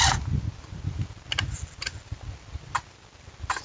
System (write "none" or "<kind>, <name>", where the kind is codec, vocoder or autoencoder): none